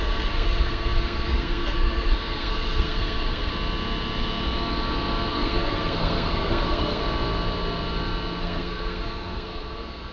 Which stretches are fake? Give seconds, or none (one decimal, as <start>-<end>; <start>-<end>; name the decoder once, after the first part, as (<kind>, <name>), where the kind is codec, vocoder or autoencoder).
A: 0.0-3.5 (codec, SNAC); 5.3-7.0; 8.4-10.1